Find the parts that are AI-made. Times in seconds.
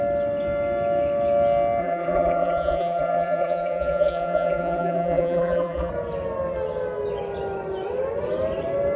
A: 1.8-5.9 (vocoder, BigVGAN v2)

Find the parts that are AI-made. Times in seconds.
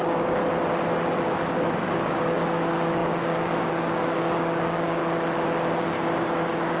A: 0.0-0.4 (codec, DAC); 1.5-5.0; 5.8-6.8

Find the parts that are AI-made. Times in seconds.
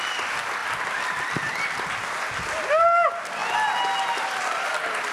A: none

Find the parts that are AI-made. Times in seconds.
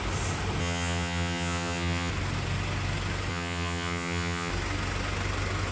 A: 0.6-2.1 (vocoder, HiFi-GAN); 3.3-4.5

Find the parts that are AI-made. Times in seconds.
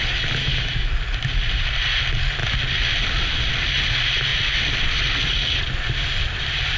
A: 0.4-0.9 (autoencoder, DAC-VAE)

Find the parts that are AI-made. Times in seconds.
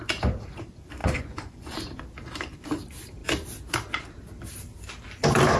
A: 1.0-2.0 (vocoder, Vocos)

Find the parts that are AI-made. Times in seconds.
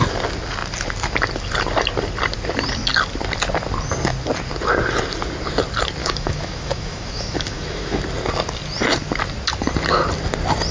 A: 6.0-8.0 (autoencoder, DAC-VAE)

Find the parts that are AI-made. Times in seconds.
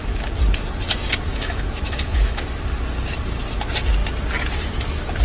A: 1.3-2.4 (autoencoder, DAC-VAE)